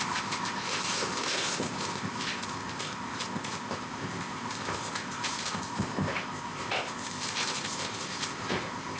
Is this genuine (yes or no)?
no